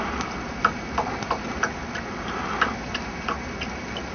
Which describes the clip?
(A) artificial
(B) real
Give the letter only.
B